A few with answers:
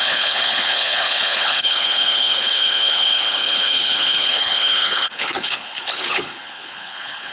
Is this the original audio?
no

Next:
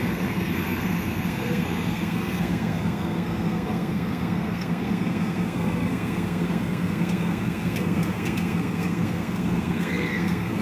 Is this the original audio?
no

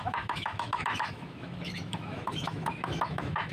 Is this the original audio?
no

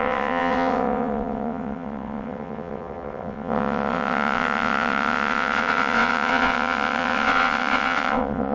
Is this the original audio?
no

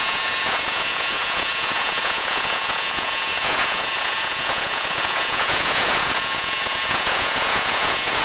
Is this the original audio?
no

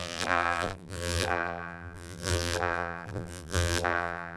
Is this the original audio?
no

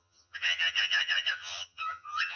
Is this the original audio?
no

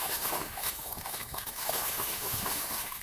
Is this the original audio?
no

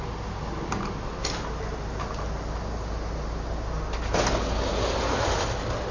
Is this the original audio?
yes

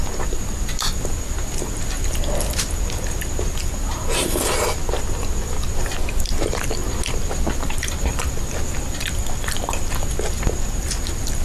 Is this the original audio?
yes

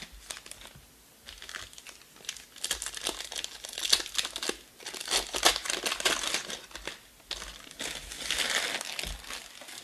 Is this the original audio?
yes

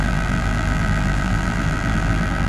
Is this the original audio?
no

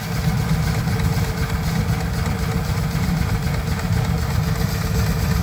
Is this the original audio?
yes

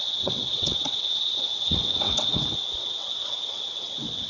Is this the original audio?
no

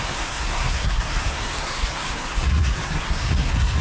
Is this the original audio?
no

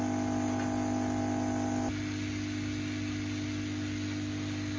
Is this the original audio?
yes